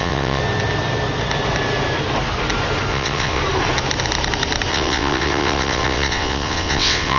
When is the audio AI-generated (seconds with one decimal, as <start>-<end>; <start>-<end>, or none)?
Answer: 0.0-0.4; 2.9-3.4; 4.7-7.2